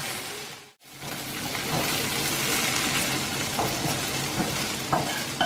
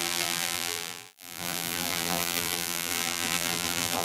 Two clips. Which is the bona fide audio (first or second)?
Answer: first